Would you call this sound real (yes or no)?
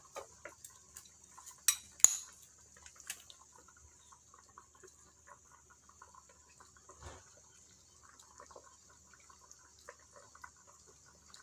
yes